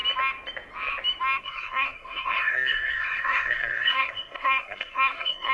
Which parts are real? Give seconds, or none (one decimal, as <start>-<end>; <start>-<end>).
0.0-1.4